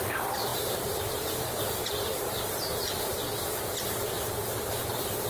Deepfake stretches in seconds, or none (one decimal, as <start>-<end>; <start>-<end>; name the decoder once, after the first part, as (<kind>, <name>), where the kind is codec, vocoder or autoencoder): 0.5-2.9 (vocoder, BigVGAN v2)